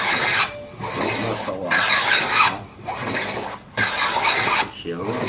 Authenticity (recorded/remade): recorded